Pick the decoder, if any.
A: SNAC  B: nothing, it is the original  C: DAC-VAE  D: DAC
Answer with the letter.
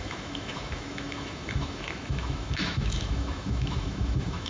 C